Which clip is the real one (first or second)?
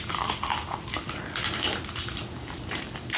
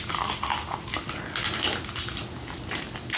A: second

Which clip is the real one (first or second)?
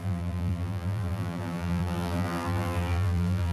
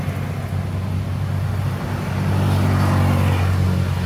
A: second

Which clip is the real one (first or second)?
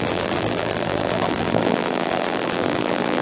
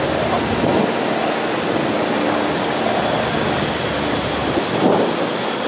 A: second